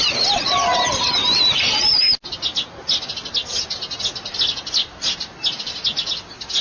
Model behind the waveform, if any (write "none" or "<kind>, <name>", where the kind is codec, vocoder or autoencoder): none